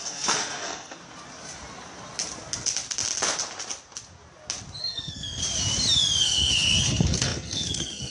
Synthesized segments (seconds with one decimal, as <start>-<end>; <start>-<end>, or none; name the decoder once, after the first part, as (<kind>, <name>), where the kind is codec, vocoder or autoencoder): 0.0-1.0 (codec, SNAC); 4.8-5.4; 6.2-8.1